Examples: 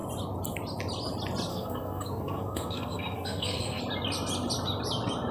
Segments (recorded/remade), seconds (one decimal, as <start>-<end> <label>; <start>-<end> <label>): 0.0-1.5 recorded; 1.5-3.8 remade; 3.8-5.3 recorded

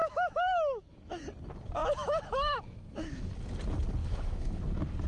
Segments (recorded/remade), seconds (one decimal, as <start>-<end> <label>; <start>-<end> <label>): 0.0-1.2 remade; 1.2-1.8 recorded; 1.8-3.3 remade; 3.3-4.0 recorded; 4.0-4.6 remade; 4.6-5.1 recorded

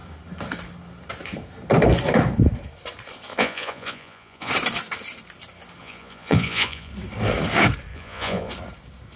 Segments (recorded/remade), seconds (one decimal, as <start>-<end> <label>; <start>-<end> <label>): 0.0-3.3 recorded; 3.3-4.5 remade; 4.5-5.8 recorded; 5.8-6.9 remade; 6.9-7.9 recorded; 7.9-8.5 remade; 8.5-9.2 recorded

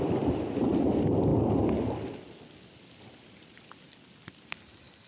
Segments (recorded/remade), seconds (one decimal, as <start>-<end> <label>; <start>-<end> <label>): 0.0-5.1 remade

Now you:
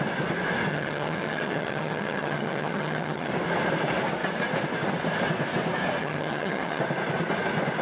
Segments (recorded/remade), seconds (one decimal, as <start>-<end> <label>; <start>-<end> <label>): 0.0-0.7 recorded; 0.7-3.3 remade; 3.3-6.0 recorded; 6.0-6.8 remade; 6.8-7.8 recorded

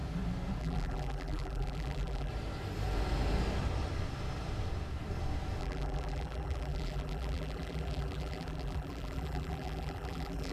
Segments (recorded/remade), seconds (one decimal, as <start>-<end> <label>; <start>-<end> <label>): 0.0-0.6 recorded; 0.6-2.3 remade; 2.3-5.6 recorded; 5.6-10.5 remade